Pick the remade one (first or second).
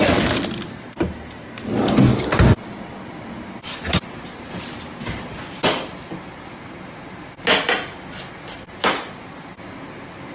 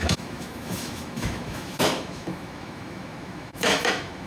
second